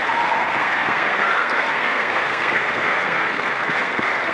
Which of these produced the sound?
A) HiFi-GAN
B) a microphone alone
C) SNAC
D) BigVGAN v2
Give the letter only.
C